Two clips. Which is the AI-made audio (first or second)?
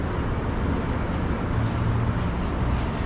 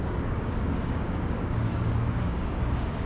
second